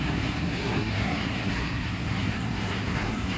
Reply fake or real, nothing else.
fake